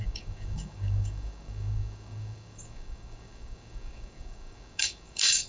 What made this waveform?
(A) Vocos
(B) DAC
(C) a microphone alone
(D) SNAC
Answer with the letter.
B